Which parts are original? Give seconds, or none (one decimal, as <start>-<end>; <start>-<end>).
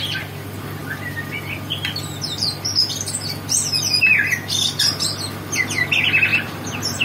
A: 0.0-6.3